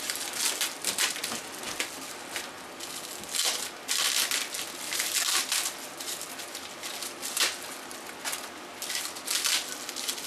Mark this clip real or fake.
real